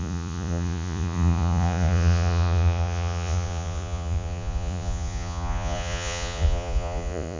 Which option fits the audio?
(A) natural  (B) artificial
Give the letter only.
B